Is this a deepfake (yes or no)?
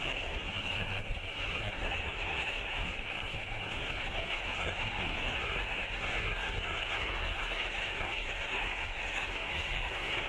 yes